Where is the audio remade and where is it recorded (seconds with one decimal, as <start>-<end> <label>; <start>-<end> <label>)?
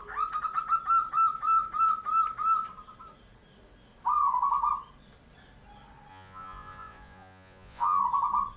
0.0-6.1 recorded; 6.1-8.0 remade; 8.0-8.6 recorded